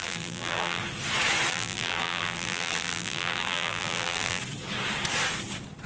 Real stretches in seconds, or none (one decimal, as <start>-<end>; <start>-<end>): 0.8-1.5; 4.4-5.9

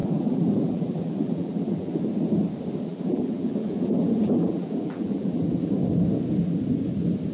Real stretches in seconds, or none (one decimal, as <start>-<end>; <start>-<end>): 2.0-2.9; 5.4-7.3

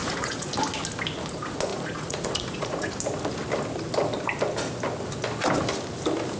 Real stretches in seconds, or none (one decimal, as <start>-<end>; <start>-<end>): 0.5-1.7; 2.9-6.4

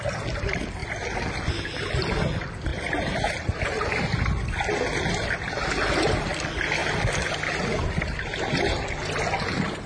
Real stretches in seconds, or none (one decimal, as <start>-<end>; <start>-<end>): 0.0-2.7; 3.3-9.9

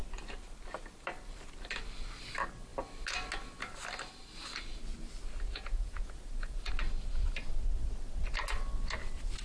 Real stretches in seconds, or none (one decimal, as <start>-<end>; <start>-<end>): 0.0-5.5; 6.7-9.4

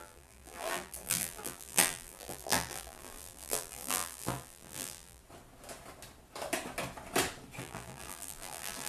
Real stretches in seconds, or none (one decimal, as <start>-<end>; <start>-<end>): 5.2-7.6